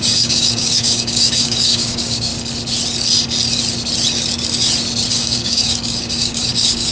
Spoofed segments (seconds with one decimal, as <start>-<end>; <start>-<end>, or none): 0.0-2.3; 5.1-6.9